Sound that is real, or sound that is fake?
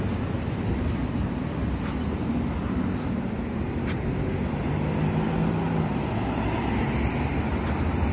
real